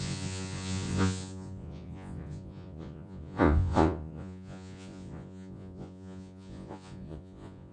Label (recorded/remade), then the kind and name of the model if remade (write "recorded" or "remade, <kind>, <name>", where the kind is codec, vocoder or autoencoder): remade, vocoder, Vocos